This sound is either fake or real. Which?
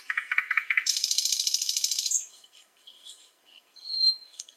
fake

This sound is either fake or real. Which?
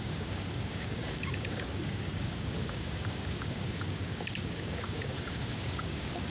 fake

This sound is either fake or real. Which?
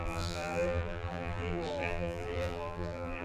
fake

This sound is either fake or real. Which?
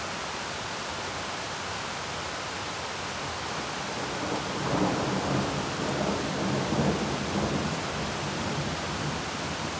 real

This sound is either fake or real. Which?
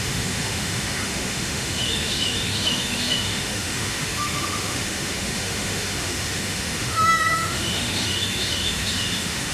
fake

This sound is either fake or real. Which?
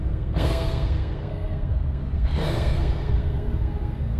fake